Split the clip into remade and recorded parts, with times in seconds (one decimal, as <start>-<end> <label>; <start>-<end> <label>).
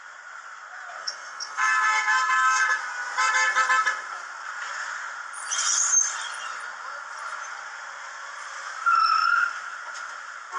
0.0-1.0 recorded; 1.0-2.8 remade; 2.8-10.6 recorded